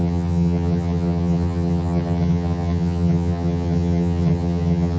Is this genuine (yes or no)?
no